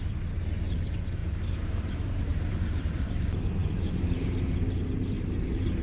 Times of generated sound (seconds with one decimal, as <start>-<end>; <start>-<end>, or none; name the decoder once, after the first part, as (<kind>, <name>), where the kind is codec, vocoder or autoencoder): 1.2-3.1 (vocoder, BigVGAN v2); 3.6-5.8